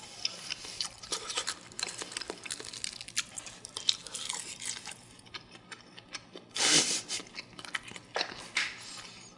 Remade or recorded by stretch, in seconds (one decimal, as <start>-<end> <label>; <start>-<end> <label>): 0.0-9.4 recorded